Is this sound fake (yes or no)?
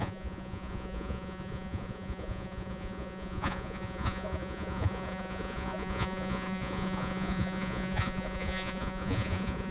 yes